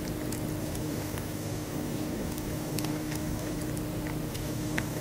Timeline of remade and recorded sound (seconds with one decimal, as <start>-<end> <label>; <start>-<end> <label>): 0.0-0.6 recorded; 0.6-3.6 remade; 3.6-4.3 recorded; 4.3-5.0 remade